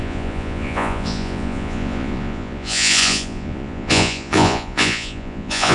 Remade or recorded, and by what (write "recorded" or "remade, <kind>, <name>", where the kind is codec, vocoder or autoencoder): remade, vocoder, Vocos